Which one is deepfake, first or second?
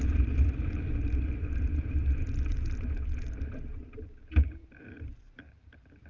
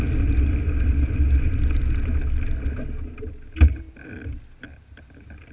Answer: first